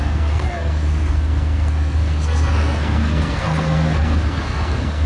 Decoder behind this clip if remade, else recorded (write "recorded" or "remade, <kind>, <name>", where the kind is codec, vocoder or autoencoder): remade, codec, SNAC